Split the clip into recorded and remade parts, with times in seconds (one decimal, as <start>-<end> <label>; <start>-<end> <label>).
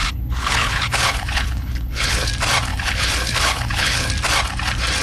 0.0-2.3 remade; 2.3-2.7 recorded; 2.7-4.1 remade; 4.1-5.0 recorded